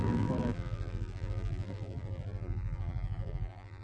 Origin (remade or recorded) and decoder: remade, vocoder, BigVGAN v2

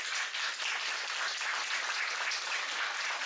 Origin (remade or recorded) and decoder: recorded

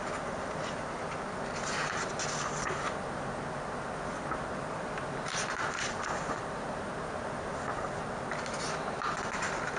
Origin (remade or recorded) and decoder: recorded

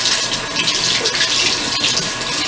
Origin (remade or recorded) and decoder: recorded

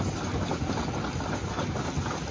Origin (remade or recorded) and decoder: recorded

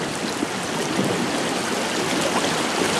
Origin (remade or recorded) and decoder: recorded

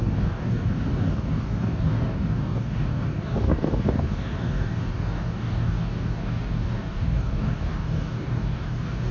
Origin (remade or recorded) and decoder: remade, codec, DAC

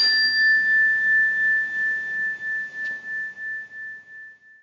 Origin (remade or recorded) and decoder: recorded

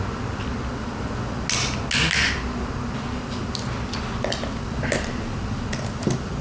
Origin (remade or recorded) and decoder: recorded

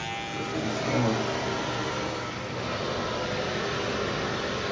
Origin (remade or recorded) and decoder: recorded